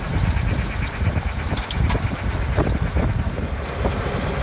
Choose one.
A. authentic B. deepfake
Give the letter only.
A